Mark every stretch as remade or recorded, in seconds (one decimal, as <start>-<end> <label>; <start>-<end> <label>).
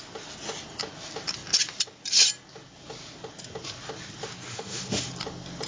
0.0-4.5 recorded; 4.5-5.1 remade; 5.1-5.7 recorded